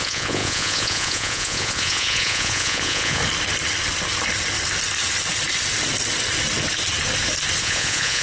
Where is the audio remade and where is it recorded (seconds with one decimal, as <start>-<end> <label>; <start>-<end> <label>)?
0.0-3.2 remade; 3.2-7.6 recorded; 7.6-8.2 remade